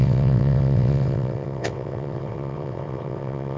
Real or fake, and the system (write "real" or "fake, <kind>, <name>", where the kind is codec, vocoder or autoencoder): fake, vocoder, WaveNeXt